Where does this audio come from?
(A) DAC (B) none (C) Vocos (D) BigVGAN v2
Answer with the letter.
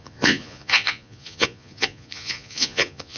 C